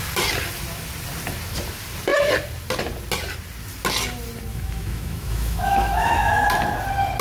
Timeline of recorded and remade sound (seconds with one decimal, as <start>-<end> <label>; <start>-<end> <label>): 0.0-4.5 recorded; 4.5-6.5 remade; 6.5-7.2 recorded